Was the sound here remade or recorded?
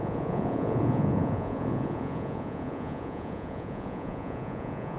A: remade